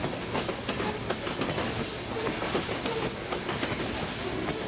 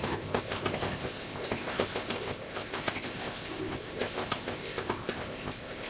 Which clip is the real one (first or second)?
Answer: first